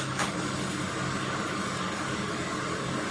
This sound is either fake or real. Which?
fake